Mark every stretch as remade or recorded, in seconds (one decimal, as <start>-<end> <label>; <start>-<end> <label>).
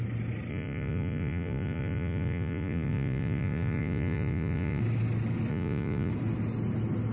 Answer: 0.0-0.5 recorded; 0.5-4.8 remade; 4.8-5.5 recorded; 5.5-6.1 remade; 6.1-7.1 recorded